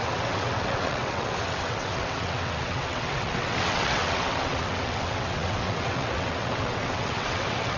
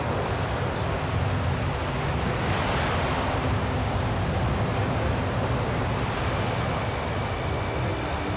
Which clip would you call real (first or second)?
second